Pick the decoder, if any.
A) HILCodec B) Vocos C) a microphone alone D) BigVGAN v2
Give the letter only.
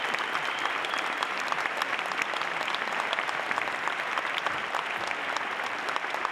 D